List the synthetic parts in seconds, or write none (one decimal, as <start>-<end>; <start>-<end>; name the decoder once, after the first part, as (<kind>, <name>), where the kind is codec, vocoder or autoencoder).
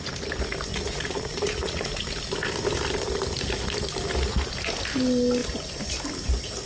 0.7-2.1 (vocoder, Vocos)